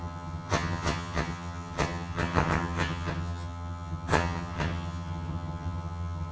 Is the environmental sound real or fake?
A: fake